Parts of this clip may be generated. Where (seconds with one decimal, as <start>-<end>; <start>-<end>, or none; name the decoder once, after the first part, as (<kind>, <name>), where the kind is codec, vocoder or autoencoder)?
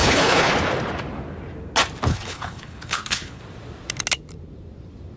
0.0-0.5 (codec, HILCodec); 2.1-3.4